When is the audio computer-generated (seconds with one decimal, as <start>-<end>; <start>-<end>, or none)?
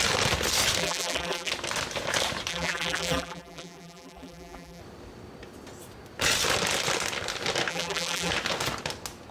0.8-1.5; 2.5-4.8; 7.7-8.3